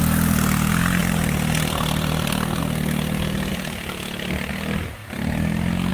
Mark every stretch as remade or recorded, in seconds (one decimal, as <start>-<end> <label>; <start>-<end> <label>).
0.0-1.0 recorded; 1.0-2.6 remade; 2.6-3.5 recorded; 3.5-4.5 remade; 4.5-5.9 recorded